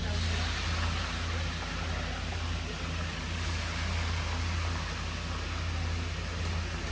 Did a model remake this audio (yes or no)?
no